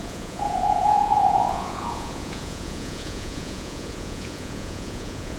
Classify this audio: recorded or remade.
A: remade